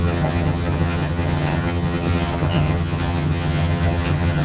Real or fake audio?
fake